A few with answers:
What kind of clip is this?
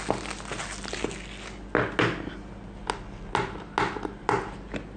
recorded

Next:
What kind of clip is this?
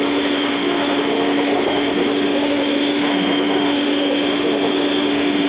remade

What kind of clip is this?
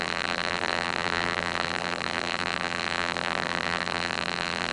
remade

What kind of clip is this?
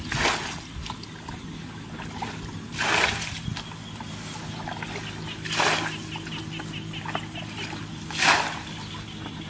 recorded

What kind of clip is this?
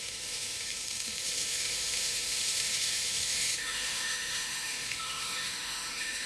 remade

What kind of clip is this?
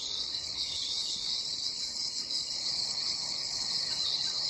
remade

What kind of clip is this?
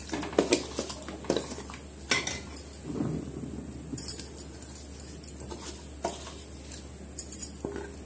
recorded